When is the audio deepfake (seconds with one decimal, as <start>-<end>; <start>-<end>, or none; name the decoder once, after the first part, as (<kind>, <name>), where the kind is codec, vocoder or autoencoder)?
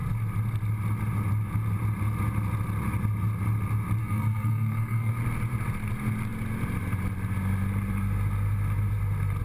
4.0-5.1 (codec, SNAC)